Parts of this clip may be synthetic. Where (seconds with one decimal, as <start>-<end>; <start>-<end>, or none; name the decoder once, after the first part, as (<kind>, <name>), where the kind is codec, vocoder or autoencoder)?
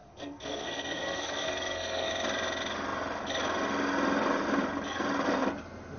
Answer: 0.0-2.1 (codec, SNAC)